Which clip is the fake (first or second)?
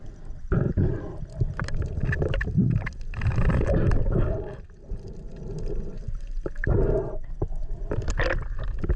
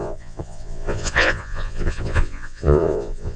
second